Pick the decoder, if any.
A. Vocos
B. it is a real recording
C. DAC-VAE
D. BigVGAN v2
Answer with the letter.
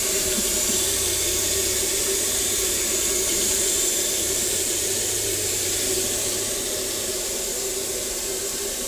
D